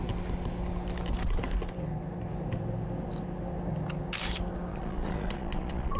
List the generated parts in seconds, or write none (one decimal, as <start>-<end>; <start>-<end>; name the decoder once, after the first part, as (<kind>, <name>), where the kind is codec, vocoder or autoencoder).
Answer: 4.7-6.0 (vocoder, Vocos)